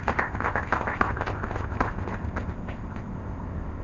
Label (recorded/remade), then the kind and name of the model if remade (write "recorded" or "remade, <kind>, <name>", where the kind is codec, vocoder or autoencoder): remade, codec, ZipCodec